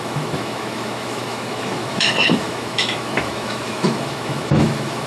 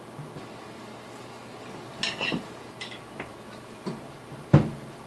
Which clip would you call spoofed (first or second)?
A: first